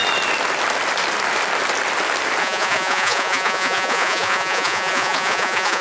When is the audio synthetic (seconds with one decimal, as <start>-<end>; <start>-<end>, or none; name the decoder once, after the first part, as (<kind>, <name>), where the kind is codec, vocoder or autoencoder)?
2.4-5.8 (vocoder, Vocos)